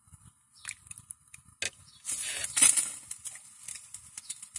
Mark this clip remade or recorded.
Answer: recorded